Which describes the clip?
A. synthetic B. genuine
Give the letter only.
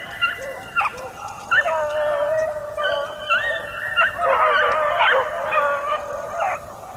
B